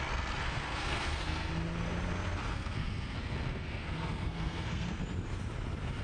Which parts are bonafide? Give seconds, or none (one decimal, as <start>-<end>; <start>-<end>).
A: 0.0-0.4; 1.5-2.5; 5.0-6.0